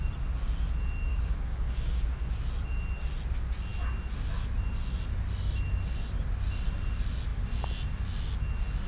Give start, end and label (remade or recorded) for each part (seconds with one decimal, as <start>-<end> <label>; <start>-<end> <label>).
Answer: 0.0-1.1 recorded; 1.1-2.3 remade; 2.3-8.9 recorded